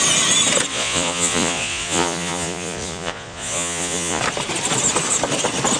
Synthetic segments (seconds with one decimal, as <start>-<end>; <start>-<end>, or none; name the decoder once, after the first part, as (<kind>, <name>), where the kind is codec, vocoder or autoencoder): 0.7-4.2 (vocoder, Vocos)